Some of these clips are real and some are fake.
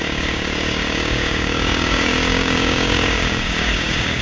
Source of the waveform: fake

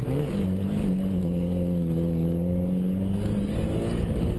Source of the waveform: fake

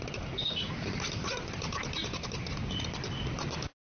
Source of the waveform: real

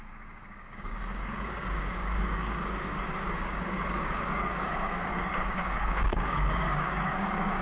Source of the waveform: fake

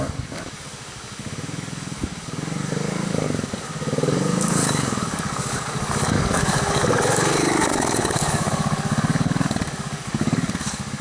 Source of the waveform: fake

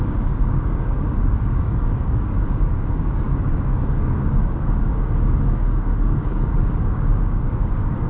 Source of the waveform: fake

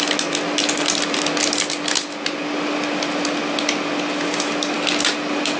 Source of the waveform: real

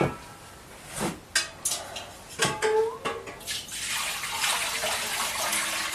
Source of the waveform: real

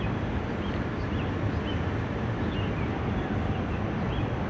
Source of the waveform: real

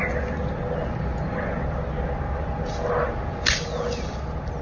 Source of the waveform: real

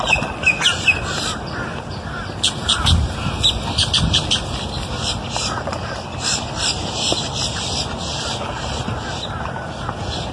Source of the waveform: real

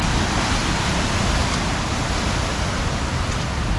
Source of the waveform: real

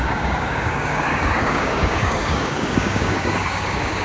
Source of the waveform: fake